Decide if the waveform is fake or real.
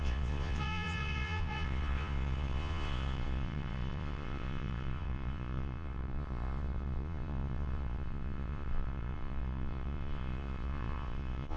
fake